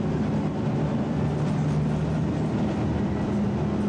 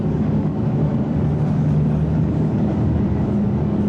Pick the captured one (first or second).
first